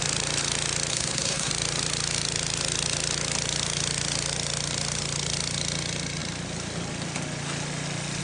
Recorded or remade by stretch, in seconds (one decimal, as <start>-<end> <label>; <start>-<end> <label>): 0.0-0.9 recorded; 0.9-1.5 remade; 1.5-8.2 recorded